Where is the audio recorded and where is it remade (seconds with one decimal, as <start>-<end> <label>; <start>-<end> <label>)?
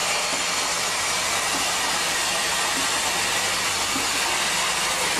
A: 0.0-5.2 recorded